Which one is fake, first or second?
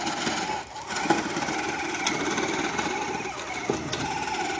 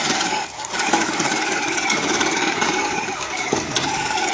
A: second